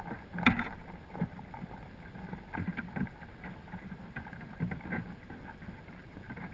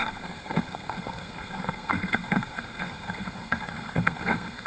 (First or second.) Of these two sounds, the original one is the first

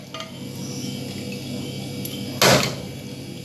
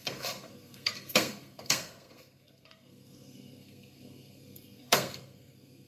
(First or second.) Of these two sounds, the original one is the first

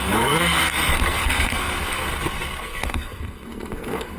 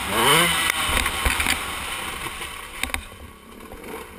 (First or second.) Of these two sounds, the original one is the second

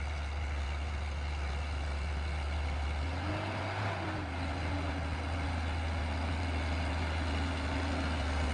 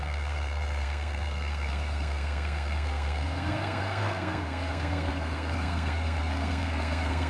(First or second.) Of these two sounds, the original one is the first